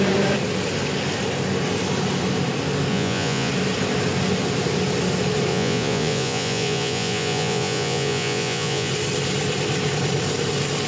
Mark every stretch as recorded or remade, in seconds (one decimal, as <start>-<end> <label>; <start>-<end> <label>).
0.0-2.9 recorded; 2.9-3.5 remade; 3.5-5.5 recorded; 5.5-8.9 remade; 8.9-10.9 recorded